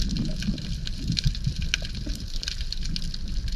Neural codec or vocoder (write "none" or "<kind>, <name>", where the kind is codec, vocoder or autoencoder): none